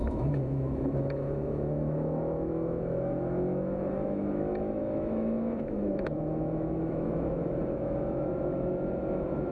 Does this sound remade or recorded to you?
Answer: remade